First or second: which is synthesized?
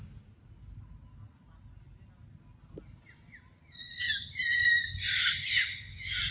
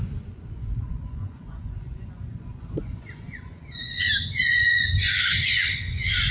second